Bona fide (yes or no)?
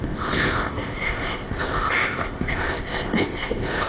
no